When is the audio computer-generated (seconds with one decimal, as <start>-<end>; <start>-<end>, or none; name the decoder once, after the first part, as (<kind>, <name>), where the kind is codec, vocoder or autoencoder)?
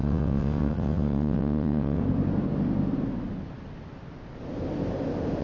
0.0-2.0 (vocoder, WaveNeXt)